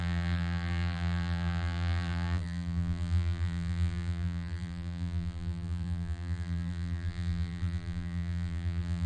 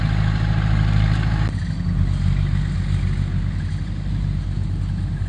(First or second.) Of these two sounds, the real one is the second